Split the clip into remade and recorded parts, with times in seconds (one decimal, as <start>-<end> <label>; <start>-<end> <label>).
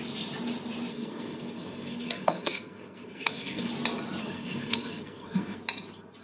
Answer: 0.0-0.9 recorded; 0.9-3.7 remade; 3.7-4.2 recorded; 4.2-5.6 remade; 5.6-6.2 recorded